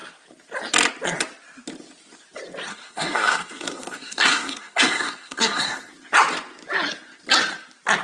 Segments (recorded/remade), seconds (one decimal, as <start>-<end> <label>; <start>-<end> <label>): 0.0-2.7 recorded; 2.7-5.9 remade; 5.9-8.0 recorded